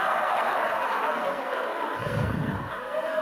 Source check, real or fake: fake